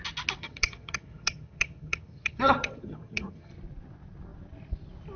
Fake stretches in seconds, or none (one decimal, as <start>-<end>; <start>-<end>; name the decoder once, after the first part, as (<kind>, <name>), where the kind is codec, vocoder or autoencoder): 0.4-3.5 (vocoder, HiFi-GAN)